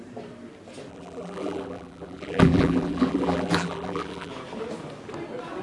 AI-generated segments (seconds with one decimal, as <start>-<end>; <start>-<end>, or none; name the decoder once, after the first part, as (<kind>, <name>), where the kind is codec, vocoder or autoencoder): 0.9-4.3 (vocoder, BigVGAN v2)

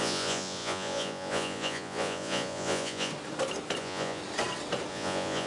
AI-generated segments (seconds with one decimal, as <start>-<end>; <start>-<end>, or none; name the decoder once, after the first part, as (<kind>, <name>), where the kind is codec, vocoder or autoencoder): 0.0-3.1 (vocoder, Vocos); 3.8-4.2; 4.9-5.5

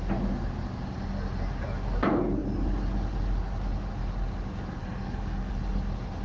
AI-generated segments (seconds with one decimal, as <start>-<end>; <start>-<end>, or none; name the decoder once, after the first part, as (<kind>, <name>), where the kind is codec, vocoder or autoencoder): 4.8-5.5 (codec, DAC)